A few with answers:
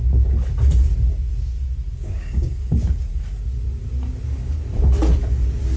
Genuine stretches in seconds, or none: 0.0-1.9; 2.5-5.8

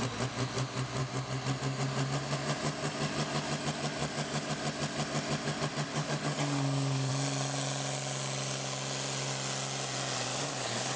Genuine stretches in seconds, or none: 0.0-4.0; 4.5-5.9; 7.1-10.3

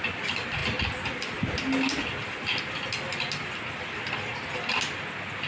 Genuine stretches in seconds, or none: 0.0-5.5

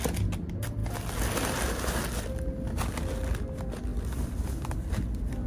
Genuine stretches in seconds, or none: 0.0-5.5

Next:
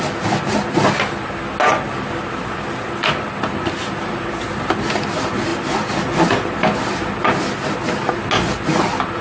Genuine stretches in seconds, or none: 0.0-9.2